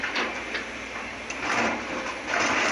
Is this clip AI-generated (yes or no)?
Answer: yes